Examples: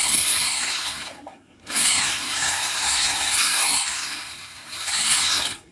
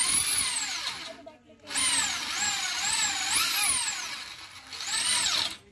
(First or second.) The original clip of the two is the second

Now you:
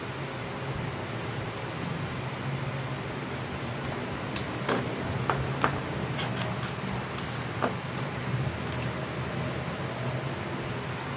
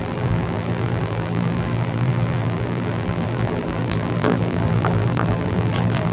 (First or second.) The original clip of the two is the first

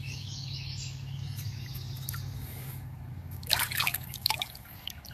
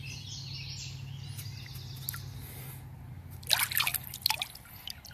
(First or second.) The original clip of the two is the second